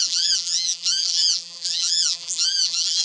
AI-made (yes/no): yes